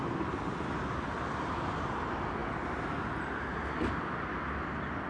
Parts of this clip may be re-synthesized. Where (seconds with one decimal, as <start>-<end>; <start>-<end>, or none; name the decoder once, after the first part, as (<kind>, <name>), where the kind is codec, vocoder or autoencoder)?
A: none